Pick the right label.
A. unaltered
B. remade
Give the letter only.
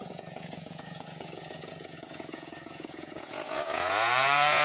B